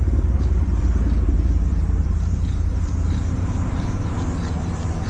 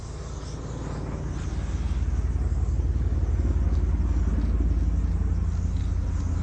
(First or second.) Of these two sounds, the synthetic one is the first